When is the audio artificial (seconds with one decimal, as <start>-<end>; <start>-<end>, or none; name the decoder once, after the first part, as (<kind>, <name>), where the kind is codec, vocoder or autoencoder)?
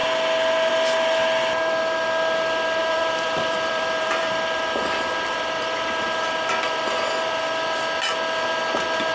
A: 2.8-6.4 (vocoder, BigVGAN v2)